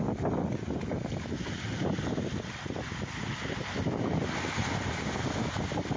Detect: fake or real real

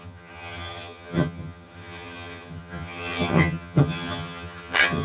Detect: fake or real fake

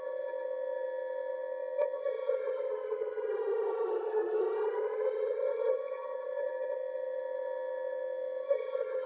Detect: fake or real fake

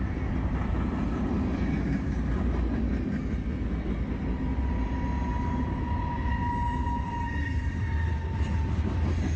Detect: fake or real real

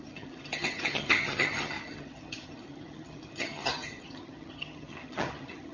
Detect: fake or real fake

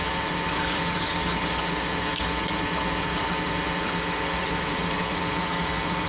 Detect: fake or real fake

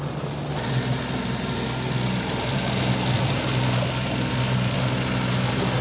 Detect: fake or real real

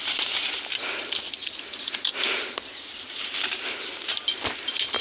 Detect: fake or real real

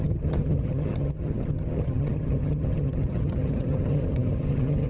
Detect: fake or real fake